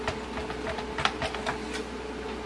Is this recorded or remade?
recorded